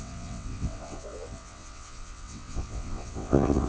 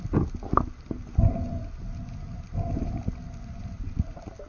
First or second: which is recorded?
second